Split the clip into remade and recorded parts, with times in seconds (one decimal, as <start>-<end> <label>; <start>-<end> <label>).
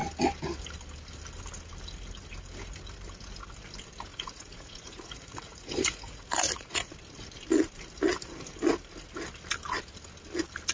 0.0-4.1 recorded; 4.1-6.9 remade; 6.9-10.7 recorded